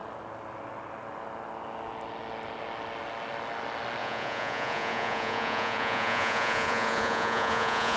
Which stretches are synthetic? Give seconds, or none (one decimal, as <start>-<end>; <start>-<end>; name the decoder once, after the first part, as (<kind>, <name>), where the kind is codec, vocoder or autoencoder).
4.0-8.0 (vocoder, Vocos)